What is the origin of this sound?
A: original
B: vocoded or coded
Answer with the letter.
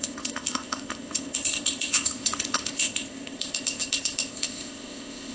B